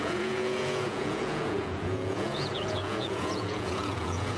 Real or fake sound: fake